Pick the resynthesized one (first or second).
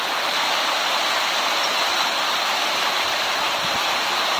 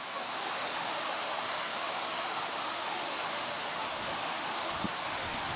second